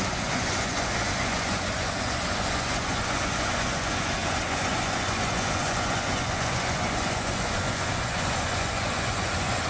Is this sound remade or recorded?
remade